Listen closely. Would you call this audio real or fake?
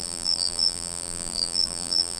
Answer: fake